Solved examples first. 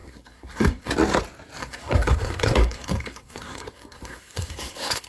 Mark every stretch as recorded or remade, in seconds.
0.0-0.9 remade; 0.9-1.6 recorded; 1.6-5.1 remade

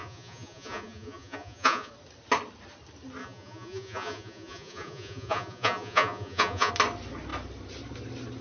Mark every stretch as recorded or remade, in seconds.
0.0-1.9 remade; 1.9-3.2 recorded; 3.2-6.7 remade; 6.7-8.4 recorded

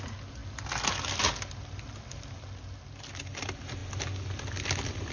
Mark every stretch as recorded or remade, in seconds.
0.0-5.1 recorded

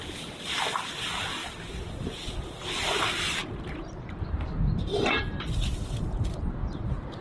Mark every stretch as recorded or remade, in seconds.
0.0-7.2 recorded

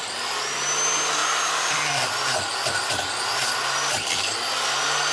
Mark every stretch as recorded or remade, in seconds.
0.0-5.1 recorded